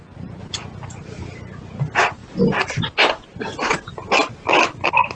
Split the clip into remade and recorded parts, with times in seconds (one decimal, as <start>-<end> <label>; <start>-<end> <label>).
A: 0.0-5.1 recorded

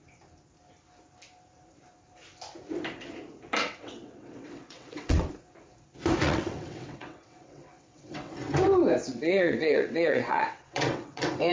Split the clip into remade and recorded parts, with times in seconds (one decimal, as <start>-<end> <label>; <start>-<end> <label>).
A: 0.0-3.6 recorded; 3.6-5.3 remade; 5.3-6.2 recorded; 6.2-8.3 remade; 8.3-9.0 recorded; 9.0-11.5 remade